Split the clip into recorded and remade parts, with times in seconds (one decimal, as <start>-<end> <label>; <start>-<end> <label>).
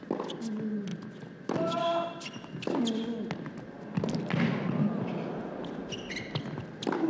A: 0.0-7.1 recorded